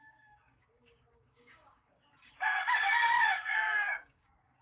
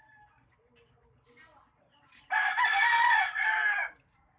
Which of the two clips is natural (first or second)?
second